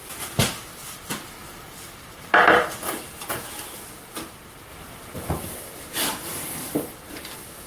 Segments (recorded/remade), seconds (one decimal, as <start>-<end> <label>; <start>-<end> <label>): 0.0-1.4 recorded; 1.4-3.4 remade; 3.4-4.7 recorded; 4.7-5.3 remade; 5.3-7.7 recorded